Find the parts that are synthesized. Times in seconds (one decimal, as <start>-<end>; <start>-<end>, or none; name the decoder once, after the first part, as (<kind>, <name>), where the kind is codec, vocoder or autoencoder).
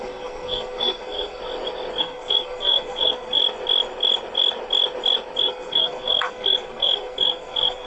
0.0-1.4 (codec, SNAC); 2.0-3.4; 5.4-7.9